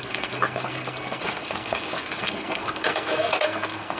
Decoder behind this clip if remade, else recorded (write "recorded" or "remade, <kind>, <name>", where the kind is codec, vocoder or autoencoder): remade, codec, SNAC